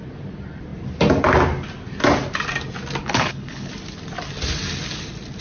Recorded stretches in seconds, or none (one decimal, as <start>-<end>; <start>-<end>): 0.0-3.0; 3.7-5.4